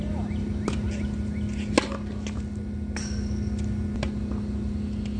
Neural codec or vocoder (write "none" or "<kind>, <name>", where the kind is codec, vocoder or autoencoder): none